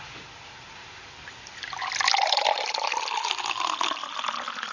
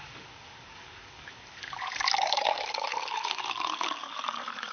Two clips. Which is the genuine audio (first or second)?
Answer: first